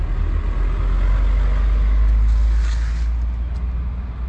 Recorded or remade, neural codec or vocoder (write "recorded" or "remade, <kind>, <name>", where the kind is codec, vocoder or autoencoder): recorded